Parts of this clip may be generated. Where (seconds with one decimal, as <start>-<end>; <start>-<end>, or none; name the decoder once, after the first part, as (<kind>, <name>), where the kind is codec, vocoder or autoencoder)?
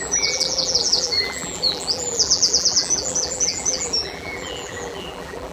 0.0-5.5 (vocoder, BigVGAN v2)